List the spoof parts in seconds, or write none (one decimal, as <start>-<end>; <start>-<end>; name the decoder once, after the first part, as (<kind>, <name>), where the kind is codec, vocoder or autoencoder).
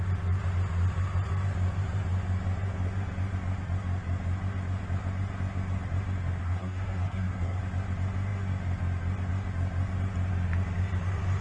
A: 6.4-7.6 (codec, SNAC)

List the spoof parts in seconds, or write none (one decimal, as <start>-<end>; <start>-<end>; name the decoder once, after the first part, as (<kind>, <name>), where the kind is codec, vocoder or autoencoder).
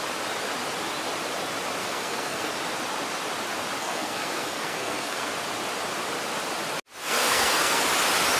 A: 1.8-2.5 (codec, SNAC); 3.8-5.3; 7.0-7.8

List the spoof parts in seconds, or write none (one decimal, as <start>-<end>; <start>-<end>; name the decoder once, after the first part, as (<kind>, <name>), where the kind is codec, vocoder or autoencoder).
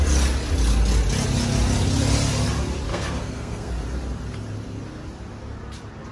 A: 2.9-3.7 (codec, SNAC)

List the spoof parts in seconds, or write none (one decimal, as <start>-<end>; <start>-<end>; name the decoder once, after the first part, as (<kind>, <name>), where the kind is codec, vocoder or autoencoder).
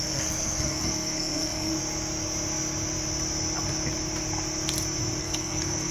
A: 0.0-1.7 (codec, SNAC); 5.2-5.9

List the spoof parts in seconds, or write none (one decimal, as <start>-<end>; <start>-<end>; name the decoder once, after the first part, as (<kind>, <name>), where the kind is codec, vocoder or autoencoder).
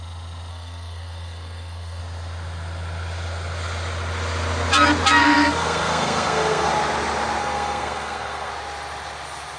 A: 0.5-2.0 (codec, SNAC); 5.2-6.7; 7.4-8.5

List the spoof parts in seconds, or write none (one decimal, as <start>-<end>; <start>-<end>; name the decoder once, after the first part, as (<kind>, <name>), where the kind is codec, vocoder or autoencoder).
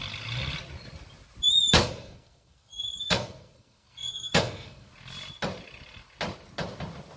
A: 1.8-4.9 (codec, SNAC)